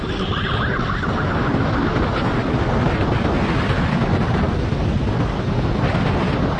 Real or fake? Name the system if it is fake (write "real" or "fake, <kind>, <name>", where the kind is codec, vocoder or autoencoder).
real